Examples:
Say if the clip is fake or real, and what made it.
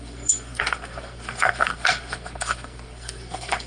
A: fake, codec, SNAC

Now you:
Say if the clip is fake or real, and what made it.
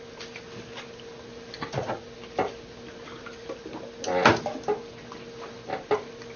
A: real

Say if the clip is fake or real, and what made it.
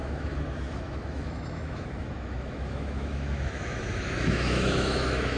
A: fake, autoencoder, DAC-VAE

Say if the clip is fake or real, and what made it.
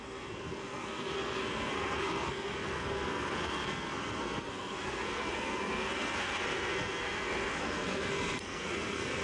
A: fake, codec, SNAC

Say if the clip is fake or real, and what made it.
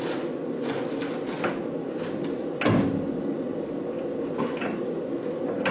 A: real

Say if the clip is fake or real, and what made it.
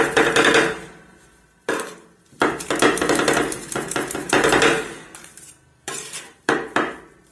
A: fake, vocoder, BigVGAN v2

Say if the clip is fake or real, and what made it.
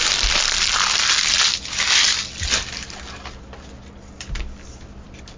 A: real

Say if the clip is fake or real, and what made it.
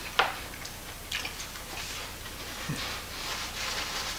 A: real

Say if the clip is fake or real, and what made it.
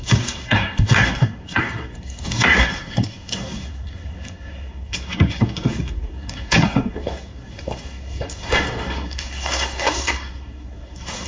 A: fake, codec, SNAC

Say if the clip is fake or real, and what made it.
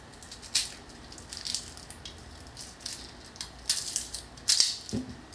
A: real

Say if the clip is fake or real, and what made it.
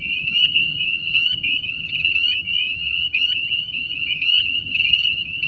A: fake, vocoder, HiFi-GAN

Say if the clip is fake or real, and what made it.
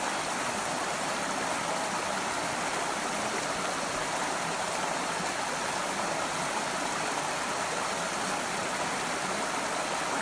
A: real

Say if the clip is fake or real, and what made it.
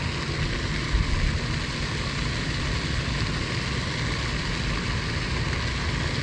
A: real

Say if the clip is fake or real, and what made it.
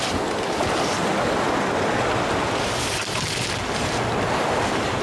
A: real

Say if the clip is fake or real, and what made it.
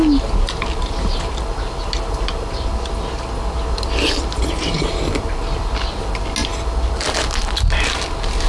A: real